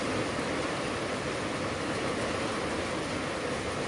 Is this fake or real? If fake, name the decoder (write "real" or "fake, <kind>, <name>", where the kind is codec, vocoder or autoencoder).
real